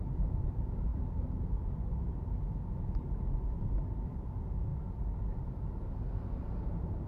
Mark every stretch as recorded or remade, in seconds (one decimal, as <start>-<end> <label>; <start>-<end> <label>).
0.0-0.9 recorded; 0.9-1.9 remade; 1.9-7.1 recorded